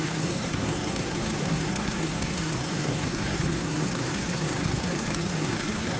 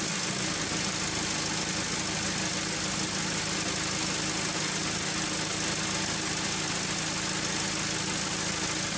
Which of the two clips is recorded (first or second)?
second